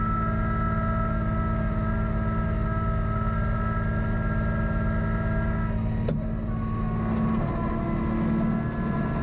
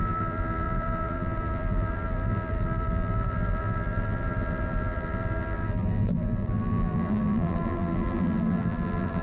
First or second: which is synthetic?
second